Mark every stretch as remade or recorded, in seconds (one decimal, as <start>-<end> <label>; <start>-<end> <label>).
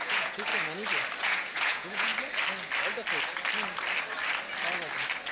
0.0-0.5 remade; 0.5-1.2 recorded; 1.2-2.1 remade; 2.1-5.3 recorded